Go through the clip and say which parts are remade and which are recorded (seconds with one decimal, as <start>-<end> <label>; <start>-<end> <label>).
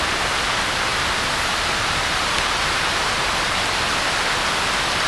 0.0-0.9 recorded; 0.9-4.0 remade; 4.0-5.1 recorded